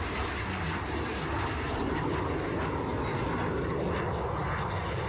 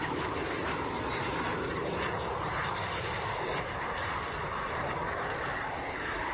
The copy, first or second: second